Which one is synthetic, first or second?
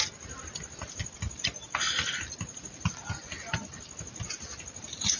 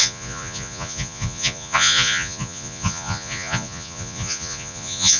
second